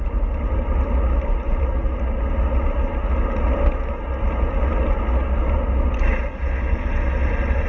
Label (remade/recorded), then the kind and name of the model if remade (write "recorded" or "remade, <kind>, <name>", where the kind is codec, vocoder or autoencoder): recorded